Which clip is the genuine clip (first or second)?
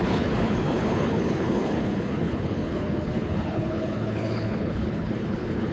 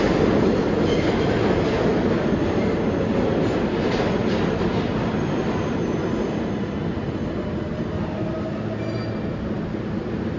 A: second